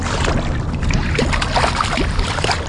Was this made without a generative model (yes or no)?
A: yes